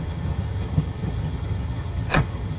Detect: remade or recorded remade